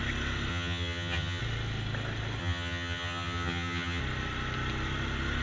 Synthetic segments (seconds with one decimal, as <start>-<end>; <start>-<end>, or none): 0.5-1.4; 2.4-4.0